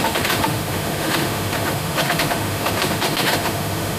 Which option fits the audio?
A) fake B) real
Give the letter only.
A